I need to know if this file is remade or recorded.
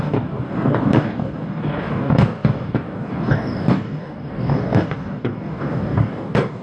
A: remade